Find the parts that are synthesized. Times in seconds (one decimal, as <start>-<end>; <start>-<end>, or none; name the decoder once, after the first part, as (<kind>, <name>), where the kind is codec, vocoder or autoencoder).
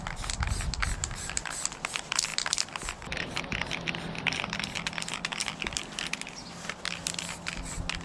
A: none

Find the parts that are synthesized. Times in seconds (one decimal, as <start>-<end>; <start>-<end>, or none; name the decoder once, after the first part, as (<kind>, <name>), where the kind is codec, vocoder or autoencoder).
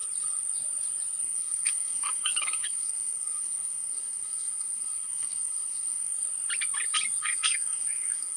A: 1.2-6.1 (codec, SNAC); 7.2-8.4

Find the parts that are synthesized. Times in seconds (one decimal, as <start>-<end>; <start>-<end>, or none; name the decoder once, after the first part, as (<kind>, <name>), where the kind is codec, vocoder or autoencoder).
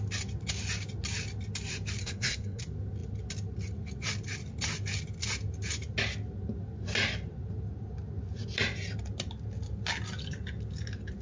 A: 2.0-2.6 (codec, SNAC)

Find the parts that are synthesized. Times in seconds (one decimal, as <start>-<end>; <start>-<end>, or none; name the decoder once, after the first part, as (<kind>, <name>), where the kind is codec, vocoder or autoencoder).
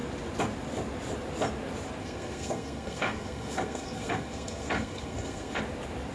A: 2.0-5.6 (codec, SNAC)